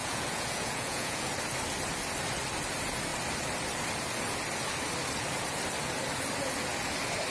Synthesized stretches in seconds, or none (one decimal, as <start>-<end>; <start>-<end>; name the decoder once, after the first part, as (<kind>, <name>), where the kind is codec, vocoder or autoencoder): 0.0-1.3 (vocoder, Vocos)